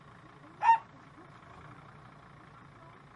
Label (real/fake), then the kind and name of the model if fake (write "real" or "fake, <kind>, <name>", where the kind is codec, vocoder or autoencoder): real